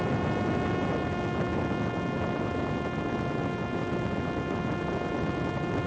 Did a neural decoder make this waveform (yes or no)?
no